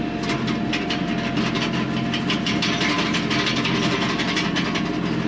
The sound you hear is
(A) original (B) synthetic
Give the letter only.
A